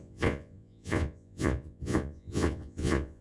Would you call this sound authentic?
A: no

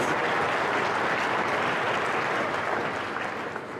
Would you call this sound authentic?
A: yes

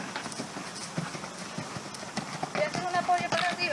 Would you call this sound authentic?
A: yes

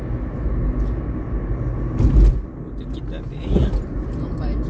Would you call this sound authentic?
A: yes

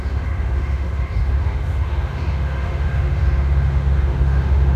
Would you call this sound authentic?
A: no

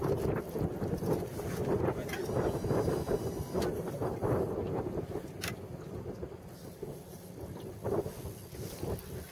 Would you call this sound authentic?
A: yes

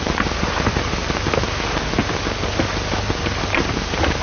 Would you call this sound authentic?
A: yes